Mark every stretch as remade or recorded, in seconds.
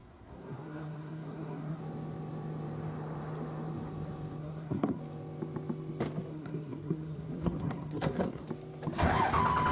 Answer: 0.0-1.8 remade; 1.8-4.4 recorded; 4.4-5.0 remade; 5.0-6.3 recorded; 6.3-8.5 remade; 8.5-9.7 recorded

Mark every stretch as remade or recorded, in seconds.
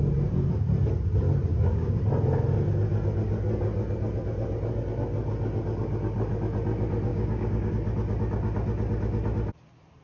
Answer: 0.0-1.5 recorded; 1.5-2.0 remade; 2.0-7.1 recorded; 7.1-7.7 remade; 7.7-10.0 recorded